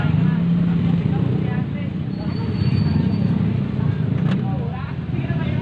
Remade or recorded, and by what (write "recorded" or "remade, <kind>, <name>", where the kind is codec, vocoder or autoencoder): recorded